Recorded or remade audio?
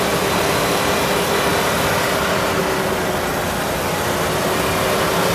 recorded